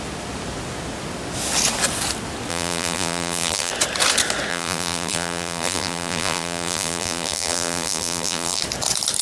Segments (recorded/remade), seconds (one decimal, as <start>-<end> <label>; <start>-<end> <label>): 0.0-2.5 recorded; 2.5-3.7 remade; 3.7-4.5 recorded; 4.5-8.6 remade; 8.6-9.2 recorded